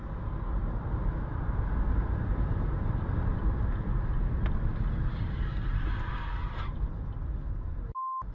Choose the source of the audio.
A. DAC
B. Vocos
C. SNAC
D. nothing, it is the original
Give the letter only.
D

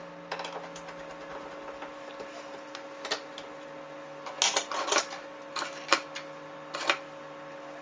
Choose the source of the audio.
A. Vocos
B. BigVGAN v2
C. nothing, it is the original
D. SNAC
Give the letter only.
C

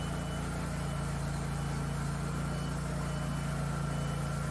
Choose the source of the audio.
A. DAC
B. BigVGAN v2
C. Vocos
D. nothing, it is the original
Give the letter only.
D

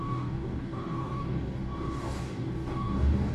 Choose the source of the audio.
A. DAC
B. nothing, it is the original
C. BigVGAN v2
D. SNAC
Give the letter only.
A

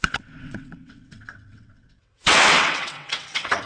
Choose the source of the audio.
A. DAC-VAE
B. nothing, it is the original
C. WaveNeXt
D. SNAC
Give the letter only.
C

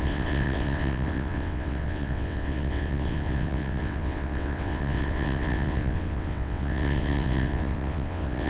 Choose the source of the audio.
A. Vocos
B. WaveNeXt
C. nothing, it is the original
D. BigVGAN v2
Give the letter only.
B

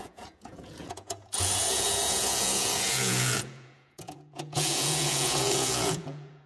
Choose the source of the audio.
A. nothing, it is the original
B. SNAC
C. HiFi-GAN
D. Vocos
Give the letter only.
D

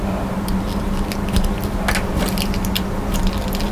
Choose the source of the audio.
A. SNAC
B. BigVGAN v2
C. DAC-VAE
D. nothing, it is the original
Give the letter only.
D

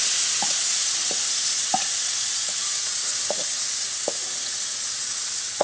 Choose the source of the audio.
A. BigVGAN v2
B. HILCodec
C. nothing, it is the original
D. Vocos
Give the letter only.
D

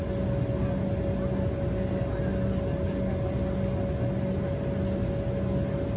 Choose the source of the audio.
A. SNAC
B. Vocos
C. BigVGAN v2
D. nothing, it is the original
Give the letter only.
D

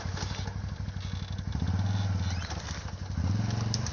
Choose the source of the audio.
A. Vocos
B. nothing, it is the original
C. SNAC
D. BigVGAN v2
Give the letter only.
B